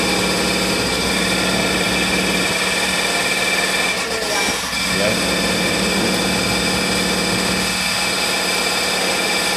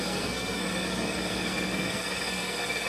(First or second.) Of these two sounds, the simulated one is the second